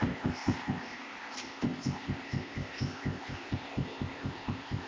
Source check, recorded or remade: remade